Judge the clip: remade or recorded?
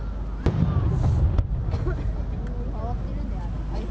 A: recorded